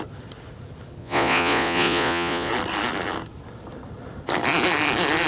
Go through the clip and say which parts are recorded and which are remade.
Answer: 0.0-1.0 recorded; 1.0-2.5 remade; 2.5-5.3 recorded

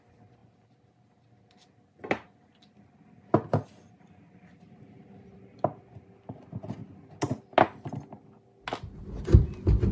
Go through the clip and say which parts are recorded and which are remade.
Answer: 0.0-9.9 recorded

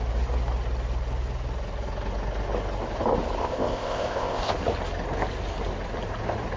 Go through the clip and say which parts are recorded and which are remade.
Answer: 0.0-3.4 recorded; 3.4-4.5 remade; 4.5-6.6 recorded

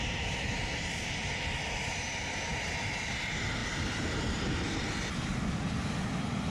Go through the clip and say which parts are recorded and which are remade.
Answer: 0.0-6.5 recorded